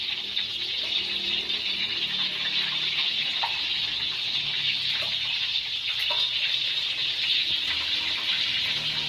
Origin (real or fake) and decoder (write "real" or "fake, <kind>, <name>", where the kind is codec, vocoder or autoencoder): real